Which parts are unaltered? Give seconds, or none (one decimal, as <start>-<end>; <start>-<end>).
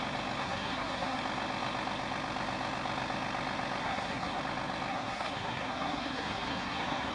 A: 0.0-0.4; 1.2-3.8; 4.4-4.9